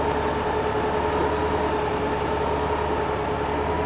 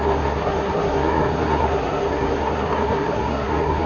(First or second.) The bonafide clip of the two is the first